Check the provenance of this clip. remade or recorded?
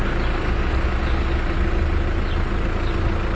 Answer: recorded